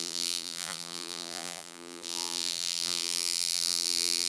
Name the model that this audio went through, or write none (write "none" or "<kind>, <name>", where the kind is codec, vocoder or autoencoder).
vocoder, BigVGAN v2